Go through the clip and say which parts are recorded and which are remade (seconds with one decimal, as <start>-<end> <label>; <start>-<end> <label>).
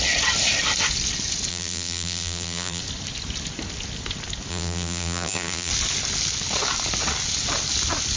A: 0.0-1.5 recorded; 1.5-2.8 remade; 2.8-4.5 recorded; 4.5-5.7 remade; 5.7-8.2 recorded